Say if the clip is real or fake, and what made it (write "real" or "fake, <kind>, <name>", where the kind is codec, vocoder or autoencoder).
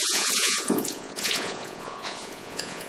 fake, vocoder, Vocos